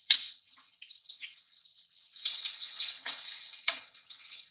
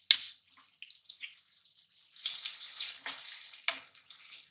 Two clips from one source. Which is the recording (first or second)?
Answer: second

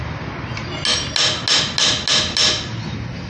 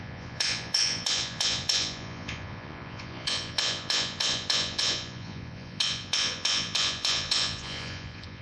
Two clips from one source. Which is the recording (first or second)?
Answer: first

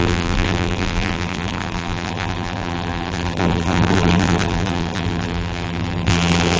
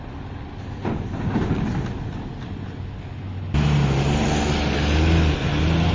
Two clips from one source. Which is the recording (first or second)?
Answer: second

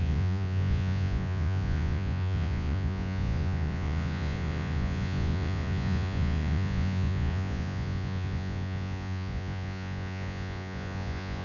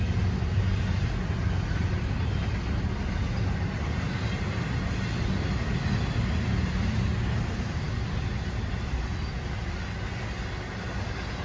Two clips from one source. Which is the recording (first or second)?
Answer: second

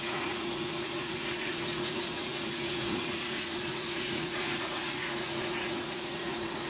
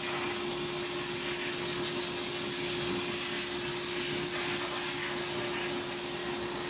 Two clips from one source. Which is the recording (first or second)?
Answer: second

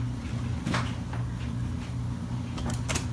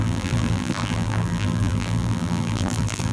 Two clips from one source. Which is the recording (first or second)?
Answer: first